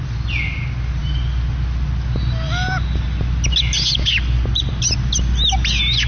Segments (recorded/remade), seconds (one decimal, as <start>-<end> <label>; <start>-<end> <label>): 0.0-6.1 recorded